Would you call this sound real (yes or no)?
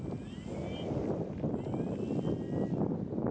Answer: yes